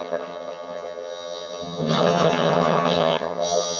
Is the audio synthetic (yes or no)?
yes